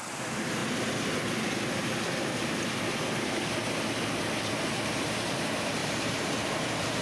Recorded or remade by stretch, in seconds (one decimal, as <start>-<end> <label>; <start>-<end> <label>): 0.0-5.8 recorded; 5.8-7.0 remade